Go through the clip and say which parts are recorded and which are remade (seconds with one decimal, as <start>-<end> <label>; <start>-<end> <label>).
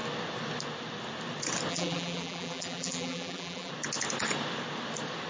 0.0-1.7 recorded; 1.7-3.7 remade; 3.7-5.3 recorded